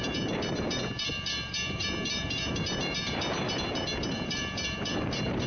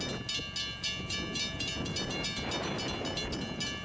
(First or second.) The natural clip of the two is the second